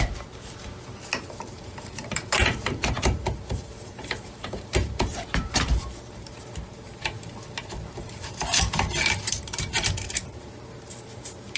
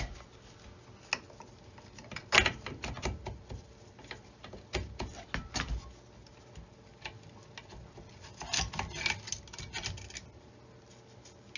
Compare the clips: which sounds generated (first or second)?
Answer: first